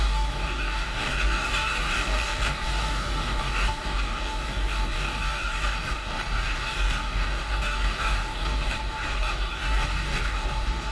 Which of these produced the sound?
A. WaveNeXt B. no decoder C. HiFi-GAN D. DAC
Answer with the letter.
D